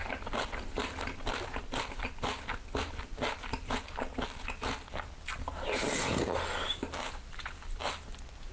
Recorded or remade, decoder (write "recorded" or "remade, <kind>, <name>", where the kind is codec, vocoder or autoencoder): recorded